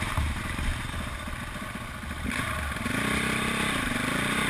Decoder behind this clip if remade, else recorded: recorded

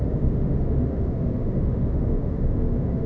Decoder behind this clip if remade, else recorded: remade, autoencoder, DAC-VAE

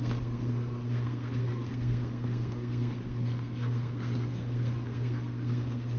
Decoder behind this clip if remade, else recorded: remade, codec, SNAC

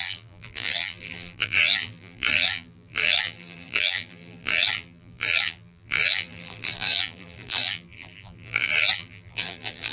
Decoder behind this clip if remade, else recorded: remade, vocoder, BigVGAN v2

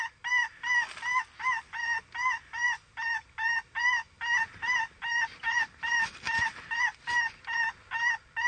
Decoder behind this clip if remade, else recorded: recorded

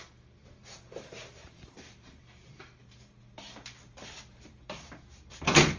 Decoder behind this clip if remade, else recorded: remade, vocoder, BigVGAN v2